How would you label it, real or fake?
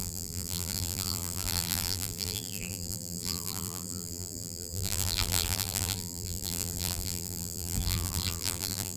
fake